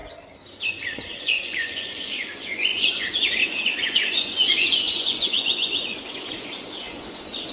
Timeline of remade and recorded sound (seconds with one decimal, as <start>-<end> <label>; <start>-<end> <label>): 0.0-0.7 recorded; 0.7-7.5 remade